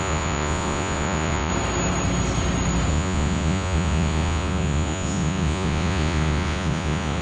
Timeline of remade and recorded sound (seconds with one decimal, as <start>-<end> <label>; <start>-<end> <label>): 0.0-1.5 remade; 1.5-2.9 recorded; 2.9-7.2 remade

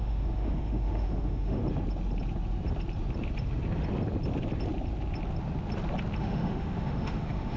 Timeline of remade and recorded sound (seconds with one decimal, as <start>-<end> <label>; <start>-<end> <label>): 0.0-1.6 remade; 1.6-6.2 recorded; 6.2-7.6 remade

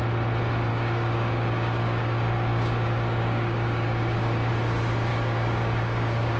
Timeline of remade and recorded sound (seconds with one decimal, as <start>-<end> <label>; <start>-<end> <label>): 0.0-0.7 recorded; 0.7-4.5 remade; 4.5-5.1 recorded; 5.1-6.4 remade

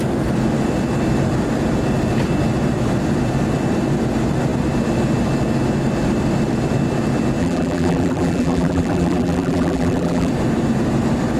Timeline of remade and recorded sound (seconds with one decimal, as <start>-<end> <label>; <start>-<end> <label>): 0.0-7.4 recorded; 7.4-10.3 remade; 10.3-11.4 recorded

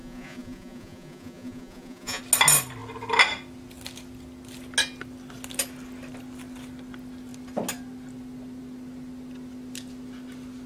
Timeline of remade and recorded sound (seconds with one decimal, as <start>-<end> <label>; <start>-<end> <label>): 0.0-2.2 remade; 2.2-10.7 recorded